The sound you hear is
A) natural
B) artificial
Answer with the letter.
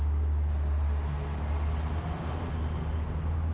A